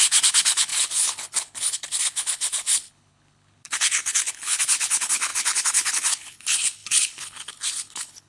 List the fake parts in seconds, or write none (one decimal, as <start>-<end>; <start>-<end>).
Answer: 0.0-8.3